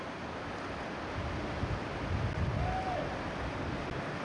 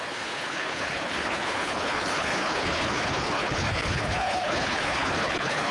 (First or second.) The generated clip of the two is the second